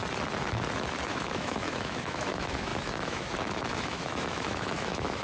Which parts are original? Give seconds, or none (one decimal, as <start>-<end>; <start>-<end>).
0.0-1.1